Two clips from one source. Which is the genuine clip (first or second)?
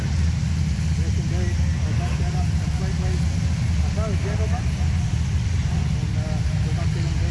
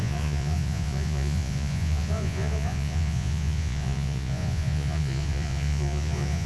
first